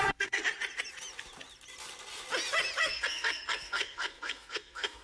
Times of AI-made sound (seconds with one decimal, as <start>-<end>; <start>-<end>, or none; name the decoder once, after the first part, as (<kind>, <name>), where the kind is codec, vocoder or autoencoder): 0.0-0.4 (codec, SNAC); 2.8-5.0